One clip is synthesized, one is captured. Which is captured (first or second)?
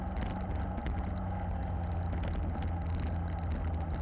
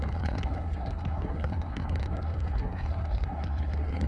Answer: first